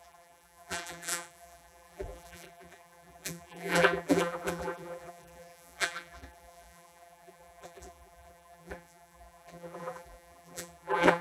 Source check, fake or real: fake